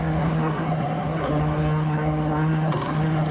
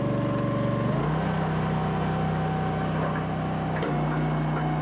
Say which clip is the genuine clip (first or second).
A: second